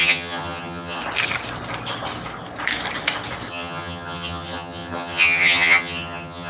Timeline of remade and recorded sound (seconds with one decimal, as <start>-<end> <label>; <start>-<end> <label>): 0.0-1.0 remade; 1.0-3.5 recorded; 3.5-6.5 remade